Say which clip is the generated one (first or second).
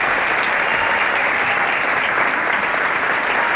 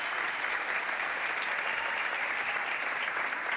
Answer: second